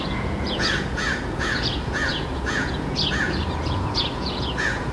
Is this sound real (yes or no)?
no